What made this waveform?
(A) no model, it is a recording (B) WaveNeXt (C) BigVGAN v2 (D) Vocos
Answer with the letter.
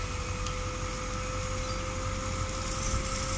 A